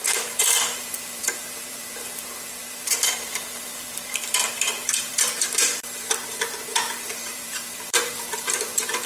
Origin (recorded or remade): remade